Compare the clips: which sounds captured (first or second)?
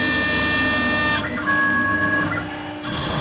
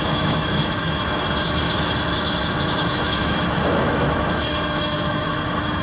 first